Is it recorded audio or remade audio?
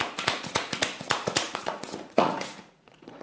remade